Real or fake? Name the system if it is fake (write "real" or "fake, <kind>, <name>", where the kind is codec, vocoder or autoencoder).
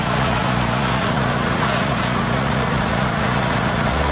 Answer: fake, vocoder, Vocos